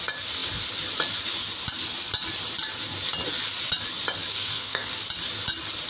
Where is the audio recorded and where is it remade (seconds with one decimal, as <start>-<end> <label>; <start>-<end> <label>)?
0.0-4.3 recorded; 4.3-4.9 remade; 4.9-5.9 recorded